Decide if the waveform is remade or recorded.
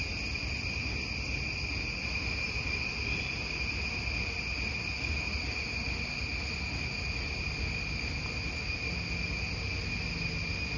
recorded